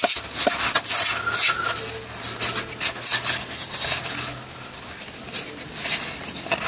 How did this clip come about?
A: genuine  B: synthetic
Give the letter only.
A